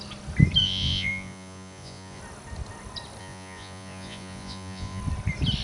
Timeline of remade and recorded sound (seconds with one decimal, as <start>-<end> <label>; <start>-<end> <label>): 0.0-0.6 recorded; 0.6-2.2 remade; 2.2-3.2 recorded; 3.2-5.0 remade; 5.0-5.6 recorded

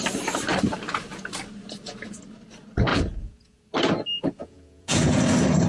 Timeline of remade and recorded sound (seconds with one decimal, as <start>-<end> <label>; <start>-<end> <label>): 0.0-2.9 recorded; 2.9-3.6 remade; 3.6-4.4 recorded; 4.4-5.2 remade; 5.2-5.7 recorded

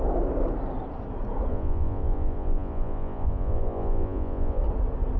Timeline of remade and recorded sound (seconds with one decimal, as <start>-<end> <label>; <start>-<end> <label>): 0.0-1.5 recorded; 1.5-4.6 remade; 4.6-5.2 recorded

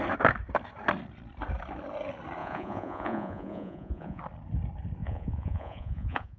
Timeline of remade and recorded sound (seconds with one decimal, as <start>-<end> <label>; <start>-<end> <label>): 0.0-2.4 recorded; 2.4-4.2 remade; 4.2-5.0 recorded; 5.0-6.4 remade

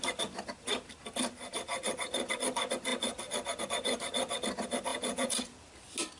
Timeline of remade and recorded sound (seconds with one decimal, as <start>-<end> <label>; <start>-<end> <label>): 0.0-4.9 recorded; 4.9-5.7 remade; 5.7-6.2 recorded

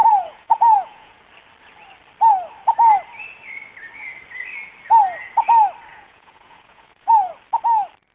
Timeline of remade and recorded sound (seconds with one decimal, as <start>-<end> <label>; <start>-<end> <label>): 0.0-1.2 remade; 1.2-5.9 recorded; 5.9-7.3 remade; 7.3-8.1 recorded

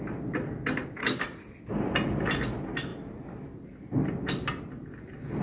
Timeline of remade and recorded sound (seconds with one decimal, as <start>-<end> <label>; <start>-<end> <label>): 0.0-5.4 recorded